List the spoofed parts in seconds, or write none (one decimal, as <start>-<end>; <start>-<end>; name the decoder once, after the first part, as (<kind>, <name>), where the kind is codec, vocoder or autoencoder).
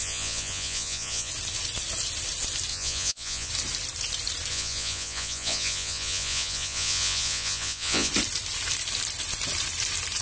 0.0-1.3 (vocoder, Vocos); 2.7-3.5; 4.5-8.1